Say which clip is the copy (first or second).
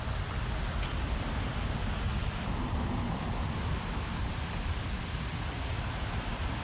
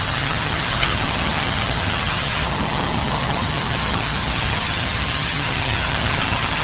second